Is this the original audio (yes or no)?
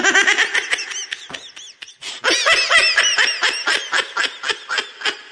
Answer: yes